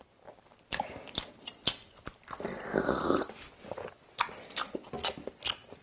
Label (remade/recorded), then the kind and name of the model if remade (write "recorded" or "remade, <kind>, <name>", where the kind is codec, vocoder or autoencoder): recorded